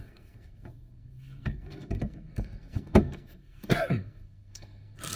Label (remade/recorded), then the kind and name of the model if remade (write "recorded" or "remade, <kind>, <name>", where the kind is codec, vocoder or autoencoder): remade, codec, SNAC